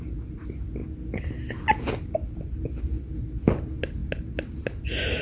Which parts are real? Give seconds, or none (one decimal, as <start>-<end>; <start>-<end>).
0.0-5.2

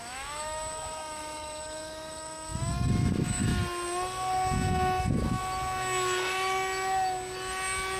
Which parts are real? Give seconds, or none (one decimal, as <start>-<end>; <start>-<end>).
3.5-5.0; 5.4-8.0